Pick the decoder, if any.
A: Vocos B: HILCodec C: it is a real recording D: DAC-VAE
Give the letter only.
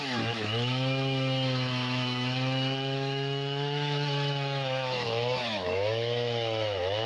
D